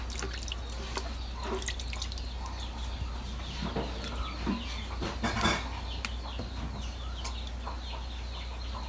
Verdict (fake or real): real